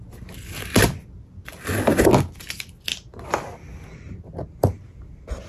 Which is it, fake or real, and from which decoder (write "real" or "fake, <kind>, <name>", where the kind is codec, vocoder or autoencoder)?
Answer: real